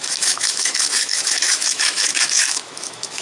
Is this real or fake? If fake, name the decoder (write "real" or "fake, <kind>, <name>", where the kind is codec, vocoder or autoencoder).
fake, autoencoder, DAC-VAE